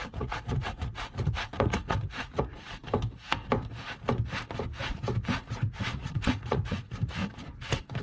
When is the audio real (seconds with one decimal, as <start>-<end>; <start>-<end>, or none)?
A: 2.8-5.5; 7.2-8.0